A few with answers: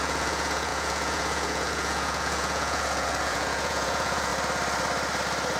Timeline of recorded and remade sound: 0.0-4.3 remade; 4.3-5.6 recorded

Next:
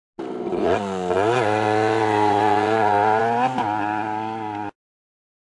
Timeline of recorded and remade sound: 0.0-0.5 recorded; 0.5-3.2 remade; 3.2-5.5 recorded

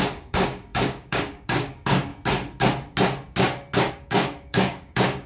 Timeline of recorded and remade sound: 0.0-2.1 remade; 2.1-3.9 recorded; 3.9-5.3 remade